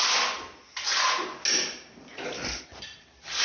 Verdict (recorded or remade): recorded